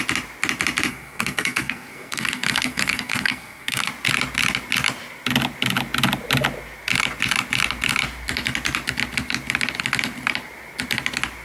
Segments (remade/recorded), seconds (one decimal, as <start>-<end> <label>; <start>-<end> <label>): 0.0-0.9 recorded; 0.9-3.9 remade; 3.9-11.4 recorded